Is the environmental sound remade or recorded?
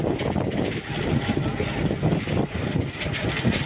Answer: recorded